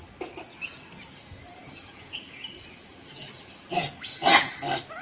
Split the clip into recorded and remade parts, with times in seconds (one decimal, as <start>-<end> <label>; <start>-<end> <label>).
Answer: 0.0-0.5 recorded; 0.5-2.4 remade; 2.4-2.9 recorded; 2.9-4.5 remade; 4.5-5.0 recorded